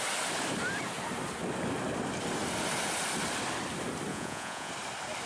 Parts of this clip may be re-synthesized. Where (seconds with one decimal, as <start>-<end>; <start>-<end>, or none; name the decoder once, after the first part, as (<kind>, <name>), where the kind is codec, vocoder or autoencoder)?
4.1-4.7 (vocoder, Vocos)